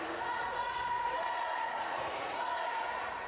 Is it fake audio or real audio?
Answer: fake